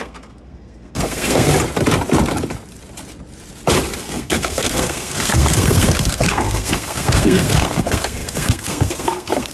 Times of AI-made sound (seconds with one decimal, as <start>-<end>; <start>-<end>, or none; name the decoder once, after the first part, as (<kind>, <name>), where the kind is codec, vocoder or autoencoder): 0.0-1.5 (codec, SNAC); 4.0-9.5